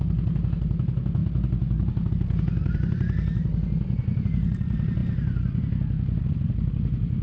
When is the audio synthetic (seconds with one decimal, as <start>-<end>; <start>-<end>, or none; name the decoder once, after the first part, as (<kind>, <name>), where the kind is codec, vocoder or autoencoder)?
none

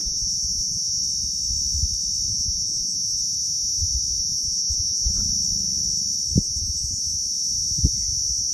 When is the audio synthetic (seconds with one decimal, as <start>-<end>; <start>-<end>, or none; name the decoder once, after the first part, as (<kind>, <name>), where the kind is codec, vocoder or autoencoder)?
0.0-1.0 (vocoder, Vocos); 2.3-3.2; 4.2-5.2; 6.4-7.0

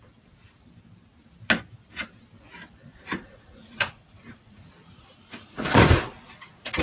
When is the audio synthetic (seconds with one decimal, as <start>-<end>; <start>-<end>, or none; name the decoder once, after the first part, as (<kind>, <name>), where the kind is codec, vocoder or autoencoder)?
2.9-6.8 (vocoder, Vocos)

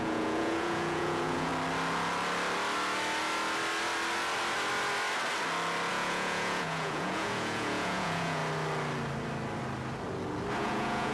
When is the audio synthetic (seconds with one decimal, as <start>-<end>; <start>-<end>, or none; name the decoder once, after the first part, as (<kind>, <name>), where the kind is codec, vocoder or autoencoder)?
0.0-1.5 (vocoder, Vocos); 5.9-8.4; 10.6-11.1

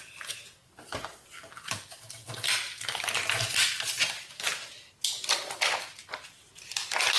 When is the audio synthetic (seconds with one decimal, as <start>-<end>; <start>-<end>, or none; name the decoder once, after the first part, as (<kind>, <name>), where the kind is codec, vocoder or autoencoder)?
none